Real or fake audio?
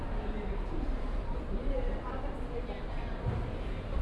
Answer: fake